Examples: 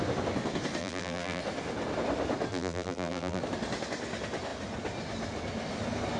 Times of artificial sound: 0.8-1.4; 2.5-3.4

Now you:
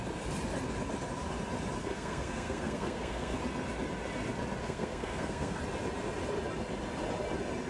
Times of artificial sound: 1.8-3.4; 4.6-5.6

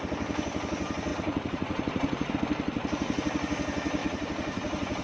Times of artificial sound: 1.1-2.3; 4.0-5.0

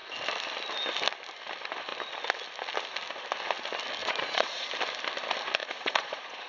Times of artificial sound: 4.0-4.7; 5.6-6.5

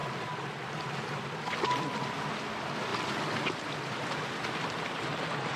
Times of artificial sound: 1.6-5.6

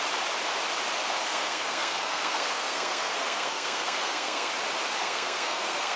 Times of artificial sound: 1.2-4.5; 5.0-6.0

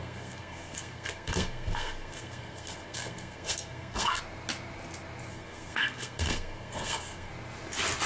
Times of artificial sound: 0.0-4.2; 5.3-7.3